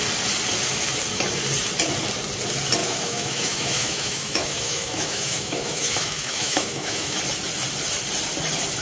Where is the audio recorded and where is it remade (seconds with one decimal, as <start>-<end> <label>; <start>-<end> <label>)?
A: 0.0-2.8 recorded; 2.8-7.2 remade; 7.2-8.8 recorded